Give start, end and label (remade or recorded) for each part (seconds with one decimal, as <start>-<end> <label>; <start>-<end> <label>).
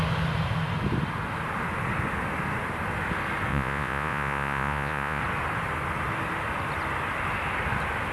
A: 0.0-3.5 recorded; 3.5-5.2 remade; 5.2-8.1 recorded